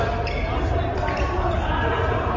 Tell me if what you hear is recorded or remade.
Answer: recorded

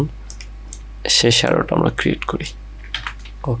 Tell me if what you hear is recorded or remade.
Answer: recorded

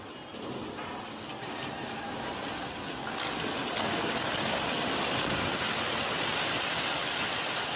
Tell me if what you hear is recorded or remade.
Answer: recorded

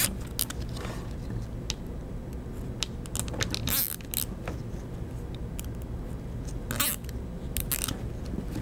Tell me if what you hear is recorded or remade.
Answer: recorded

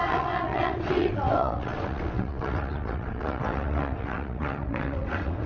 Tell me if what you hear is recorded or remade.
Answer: remade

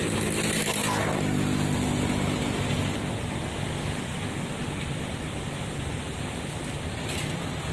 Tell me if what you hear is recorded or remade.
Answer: recorded